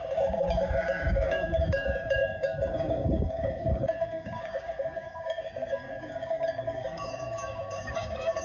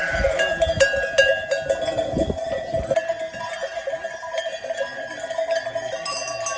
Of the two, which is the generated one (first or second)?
first